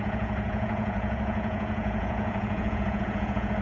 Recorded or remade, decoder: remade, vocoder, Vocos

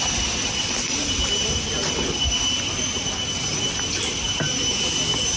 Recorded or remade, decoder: recorded